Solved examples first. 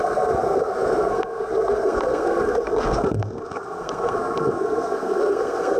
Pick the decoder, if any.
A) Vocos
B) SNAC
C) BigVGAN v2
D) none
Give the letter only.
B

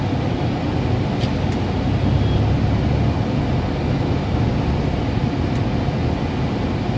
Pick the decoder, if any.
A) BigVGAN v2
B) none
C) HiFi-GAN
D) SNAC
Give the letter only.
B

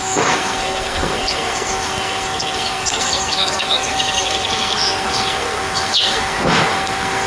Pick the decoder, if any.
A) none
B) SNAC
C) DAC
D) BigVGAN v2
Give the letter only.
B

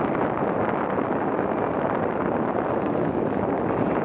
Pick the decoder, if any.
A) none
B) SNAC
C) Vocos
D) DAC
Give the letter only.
A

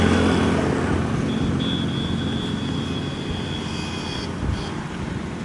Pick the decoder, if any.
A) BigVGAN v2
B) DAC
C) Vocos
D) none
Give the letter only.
D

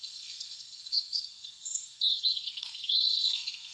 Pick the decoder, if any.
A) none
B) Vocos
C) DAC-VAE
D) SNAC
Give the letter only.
D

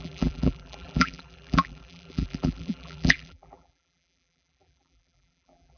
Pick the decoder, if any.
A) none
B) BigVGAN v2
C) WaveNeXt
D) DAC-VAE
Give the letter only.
B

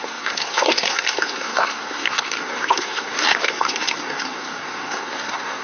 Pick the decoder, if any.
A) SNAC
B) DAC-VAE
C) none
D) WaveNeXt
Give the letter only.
A